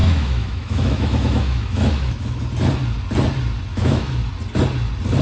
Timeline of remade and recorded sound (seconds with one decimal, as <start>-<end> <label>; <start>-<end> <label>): 0.0-2.4 remade; 2.4-3.7 recorded; 3.7-4.2 remade; 4.2-5.2 recorded